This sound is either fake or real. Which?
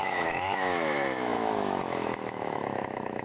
fake